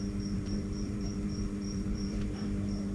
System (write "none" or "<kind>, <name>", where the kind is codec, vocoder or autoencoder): vocoder, BigVGAN v2